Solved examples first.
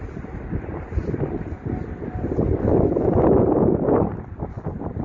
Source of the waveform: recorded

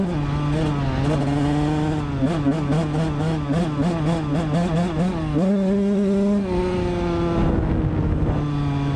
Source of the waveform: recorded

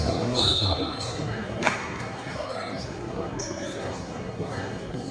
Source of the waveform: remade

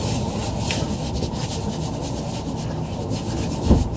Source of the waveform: recorded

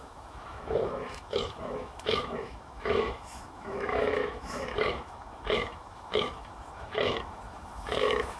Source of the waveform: remade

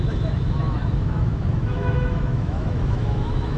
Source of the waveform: remade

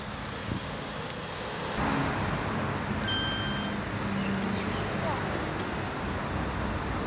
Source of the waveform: recorded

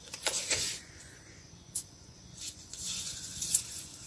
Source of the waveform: remade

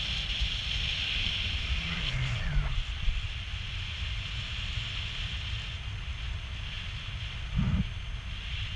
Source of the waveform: recorded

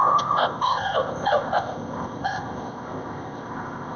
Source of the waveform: remade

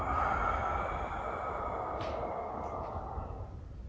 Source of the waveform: recorded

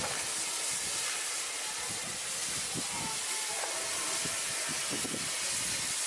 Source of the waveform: recorded